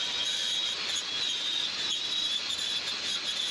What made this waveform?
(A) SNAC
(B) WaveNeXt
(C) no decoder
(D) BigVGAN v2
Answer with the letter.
C